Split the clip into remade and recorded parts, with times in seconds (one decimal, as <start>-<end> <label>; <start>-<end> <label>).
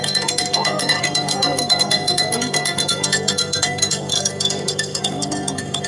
0.0-5.9 remade